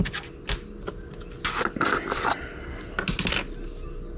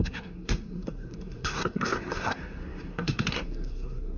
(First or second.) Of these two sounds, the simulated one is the second